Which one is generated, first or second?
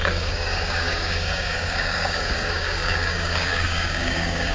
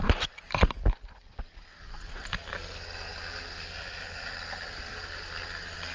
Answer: first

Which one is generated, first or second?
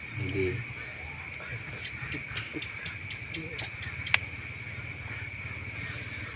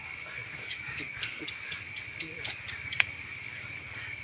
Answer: second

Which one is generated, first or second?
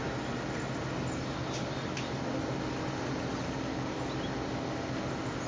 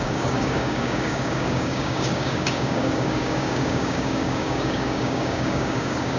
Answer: second